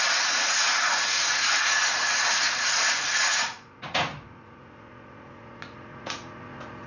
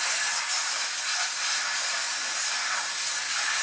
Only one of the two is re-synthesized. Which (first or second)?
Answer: first